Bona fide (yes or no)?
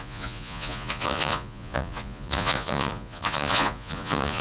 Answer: no